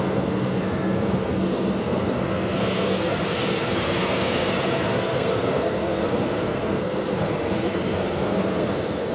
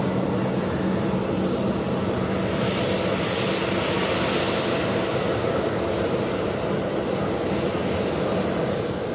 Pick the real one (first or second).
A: second